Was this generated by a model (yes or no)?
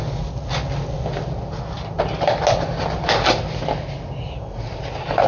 no